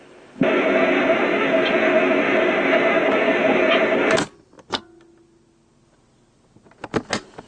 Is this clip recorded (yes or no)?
yes